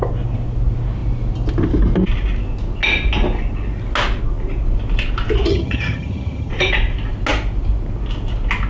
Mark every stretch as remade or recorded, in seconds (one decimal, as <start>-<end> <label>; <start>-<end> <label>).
0.0-5.5 recorded; 5.5-6.5 remade; 6.5-8.7 recorded